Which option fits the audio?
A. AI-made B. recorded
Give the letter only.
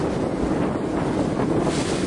B